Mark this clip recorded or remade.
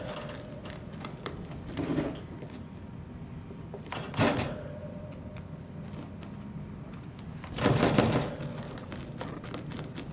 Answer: recorded